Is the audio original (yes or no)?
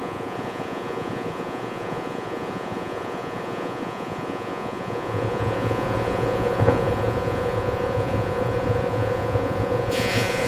no